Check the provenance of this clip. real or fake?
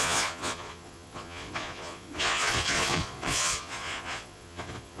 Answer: fake